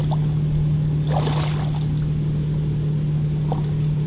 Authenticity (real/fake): real